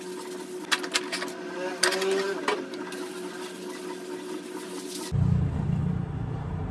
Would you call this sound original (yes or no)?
yes